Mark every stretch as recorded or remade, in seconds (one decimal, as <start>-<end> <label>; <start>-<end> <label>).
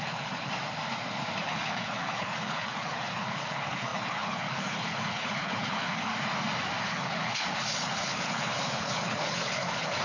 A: 0.0-0.5 remade; 0.5-1.4 recorded; 1.4-6.1 remade; 6.1-6.8 recorded; 6.8-10.0 remade